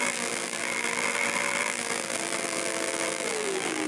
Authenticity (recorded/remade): remade